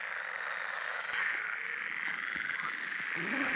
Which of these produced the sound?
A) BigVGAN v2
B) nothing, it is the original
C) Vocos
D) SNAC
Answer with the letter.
B